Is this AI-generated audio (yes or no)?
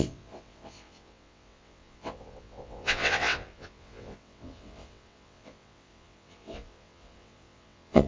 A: yes